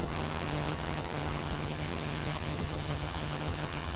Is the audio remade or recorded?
remade